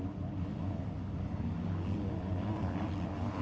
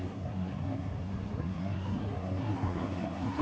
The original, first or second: first